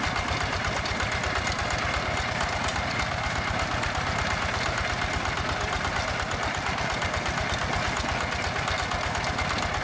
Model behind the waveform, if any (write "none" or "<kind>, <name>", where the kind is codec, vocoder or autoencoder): none